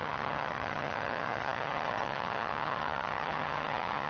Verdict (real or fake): fake